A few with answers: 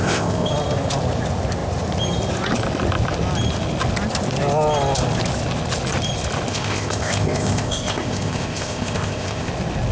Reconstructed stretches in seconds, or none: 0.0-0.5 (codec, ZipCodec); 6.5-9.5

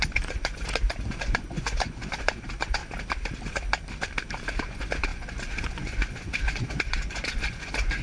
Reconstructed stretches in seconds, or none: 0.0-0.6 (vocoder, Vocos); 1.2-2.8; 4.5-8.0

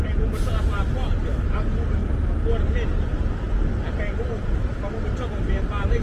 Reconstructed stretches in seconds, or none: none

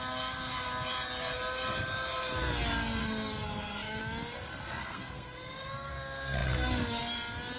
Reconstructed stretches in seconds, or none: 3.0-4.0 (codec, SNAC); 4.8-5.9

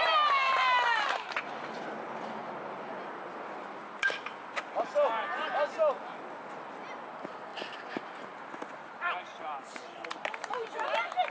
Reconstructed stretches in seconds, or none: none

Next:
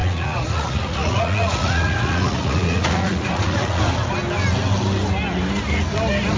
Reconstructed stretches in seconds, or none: 0.0-3.8 (vocoder, Vocos)